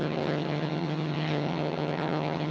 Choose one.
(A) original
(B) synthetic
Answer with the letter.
B